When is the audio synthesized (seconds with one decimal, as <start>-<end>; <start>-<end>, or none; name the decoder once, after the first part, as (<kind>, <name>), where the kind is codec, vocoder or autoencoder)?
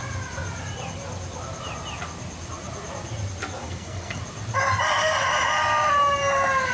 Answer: 3.6-4.2 (codec, SNAC)